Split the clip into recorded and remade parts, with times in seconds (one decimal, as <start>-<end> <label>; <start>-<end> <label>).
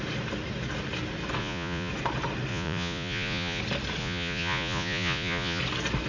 0.0-1.4 recorded; 1.4-1.9 remade; 1.9-2.5 recorded; 2.5-3.6 remade; 3.6-4.0 recorded; 4.0-5.6 remade; 5.6-6.1 recorded